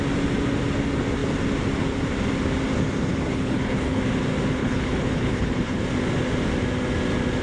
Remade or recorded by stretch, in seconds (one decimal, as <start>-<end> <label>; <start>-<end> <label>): 0.0-3.3 recorded; 3.3-4.0 remade; 4.0-4.6 recorded; 4.6-5.8 remade; 5.8-7.4 recorded